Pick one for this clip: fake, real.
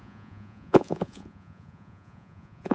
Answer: fake